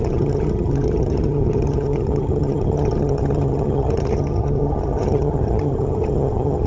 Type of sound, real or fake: fake